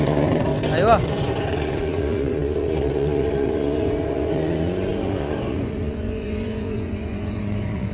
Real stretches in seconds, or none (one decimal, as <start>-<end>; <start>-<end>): 0.5-1.0